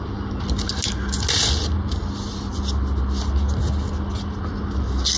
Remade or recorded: recorded